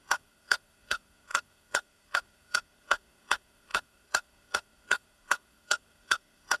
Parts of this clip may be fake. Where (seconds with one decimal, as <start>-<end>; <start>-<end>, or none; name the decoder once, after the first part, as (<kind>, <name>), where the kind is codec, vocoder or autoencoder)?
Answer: 0.0-6.6 (codec, SNAC)